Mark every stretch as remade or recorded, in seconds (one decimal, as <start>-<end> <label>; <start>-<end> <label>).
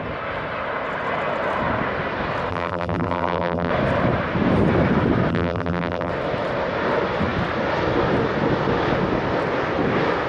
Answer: 0.0-2.5 recorded; 2.5-3.7 remade; 3.7-5.3 recorded; 5.3-6.1 remade; 6.1-10.3 recorded